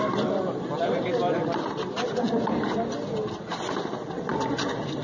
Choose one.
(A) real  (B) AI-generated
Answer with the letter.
A